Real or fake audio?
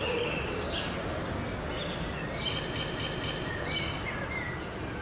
real